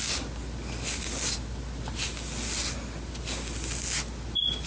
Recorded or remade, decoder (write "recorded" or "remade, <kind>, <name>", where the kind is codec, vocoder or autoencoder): recorded